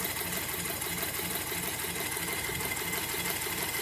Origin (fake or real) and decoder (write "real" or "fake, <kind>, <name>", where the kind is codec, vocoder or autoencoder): real